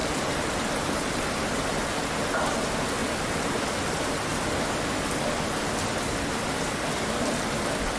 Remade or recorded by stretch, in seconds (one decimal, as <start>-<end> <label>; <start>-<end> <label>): 0.0-1.3 remade; 1.3-3.0 recorded; 3.0-3.6 remade; 3.6-8.0 recorded

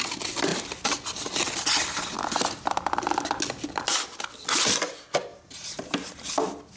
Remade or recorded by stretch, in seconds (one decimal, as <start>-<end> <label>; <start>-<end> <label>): 0.0-5.3 recorded; 5.3-6.3 remade; 6.3-6.8 recorded

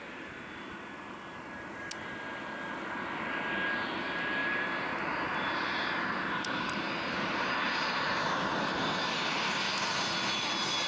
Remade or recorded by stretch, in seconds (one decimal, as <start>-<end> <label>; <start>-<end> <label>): 0.0-4.4 recorded; 4.4-8.7 remade; 8.7-10.9 recorded

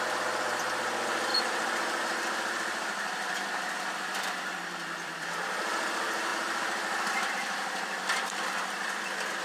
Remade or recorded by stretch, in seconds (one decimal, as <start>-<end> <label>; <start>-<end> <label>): 0.0-9.4 remade

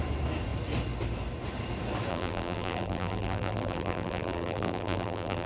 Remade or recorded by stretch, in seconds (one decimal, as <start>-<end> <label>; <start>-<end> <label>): 0.0-2.1 recorded; 2.1-5.5 remade